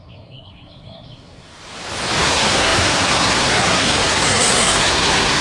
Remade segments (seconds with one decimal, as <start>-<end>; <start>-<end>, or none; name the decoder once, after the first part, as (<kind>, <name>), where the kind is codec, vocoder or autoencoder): 0.0-1.6 (codec, SNAC); 2.2-5.4